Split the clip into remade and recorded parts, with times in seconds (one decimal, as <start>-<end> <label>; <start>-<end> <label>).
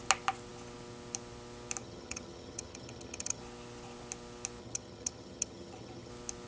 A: 0.0-1.8 recorded; 1.8-3.4 remade; 3.4-4.6 recorded; 4.6-6.1 remade; 6.1-6.5 recorded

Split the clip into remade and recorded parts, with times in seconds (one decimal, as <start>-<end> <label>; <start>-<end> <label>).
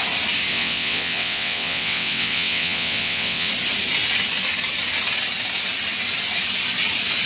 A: 0.0-0.5 recorded; 0.5-3.5 remade; 3.5-7.3 recorded